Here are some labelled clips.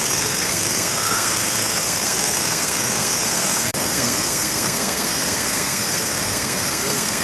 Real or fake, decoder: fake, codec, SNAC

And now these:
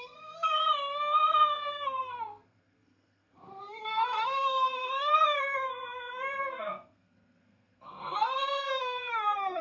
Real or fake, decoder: fake, codec, SNAC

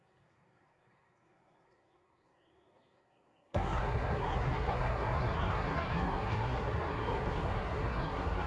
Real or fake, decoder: fake, codec, SNAC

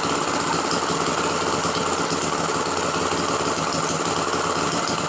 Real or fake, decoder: real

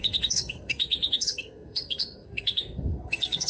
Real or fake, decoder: fake, codec, SNAC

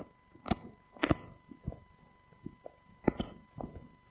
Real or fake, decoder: real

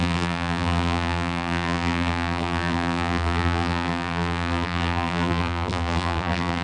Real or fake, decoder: fake, vocoder, BigVGAN v2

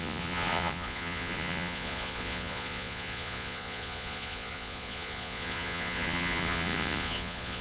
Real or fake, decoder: fake, vocoder, Vocos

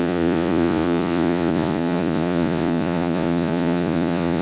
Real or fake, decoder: fake, vocoder, Vocos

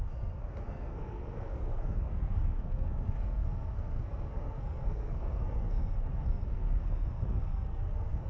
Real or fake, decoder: fake, codec, SNAC